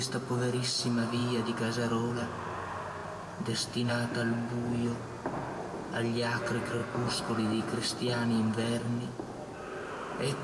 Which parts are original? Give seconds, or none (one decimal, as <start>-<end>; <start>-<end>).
0.0-10.4